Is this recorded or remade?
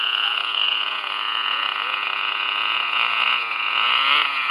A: remade